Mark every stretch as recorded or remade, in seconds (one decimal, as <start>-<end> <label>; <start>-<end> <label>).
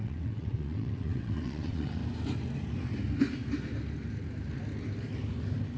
0.0-2.0 remade; 2.0-5.8 recorded